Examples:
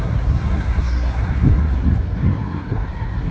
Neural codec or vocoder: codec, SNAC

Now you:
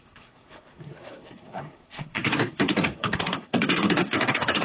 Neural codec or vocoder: codec, SNAC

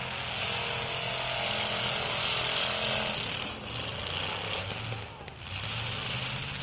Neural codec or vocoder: none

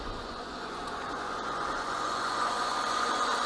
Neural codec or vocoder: vocoder, Vocos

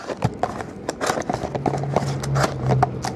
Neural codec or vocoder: none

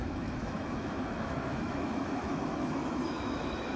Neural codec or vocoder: autoencoder, DAC-VAE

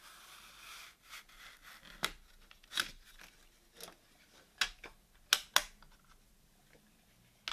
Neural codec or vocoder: none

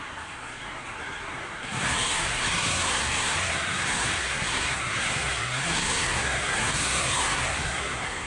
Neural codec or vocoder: codec, SNAC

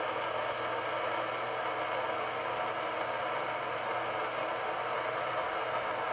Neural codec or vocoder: none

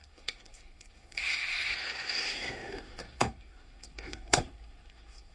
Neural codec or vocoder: codec, SNAC